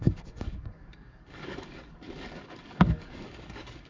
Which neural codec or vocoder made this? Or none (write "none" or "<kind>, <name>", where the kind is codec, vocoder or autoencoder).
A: codec, DAC